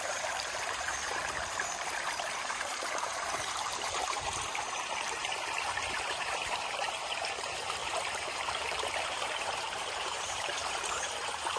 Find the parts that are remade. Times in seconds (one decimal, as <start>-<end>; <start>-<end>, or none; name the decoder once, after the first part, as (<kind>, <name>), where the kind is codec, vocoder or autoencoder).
0.0-11.6 (vocoder, BigVGAN v2)